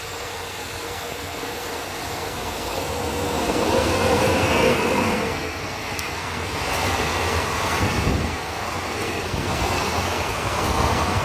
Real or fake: fake